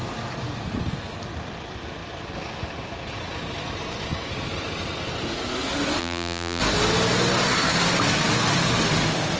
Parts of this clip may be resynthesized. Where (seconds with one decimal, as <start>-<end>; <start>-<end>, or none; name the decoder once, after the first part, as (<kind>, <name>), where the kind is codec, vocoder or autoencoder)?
6.0-6.6 (vocoder, BigVGAN v2)